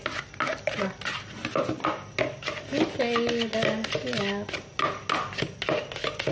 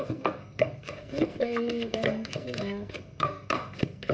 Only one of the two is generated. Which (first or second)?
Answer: second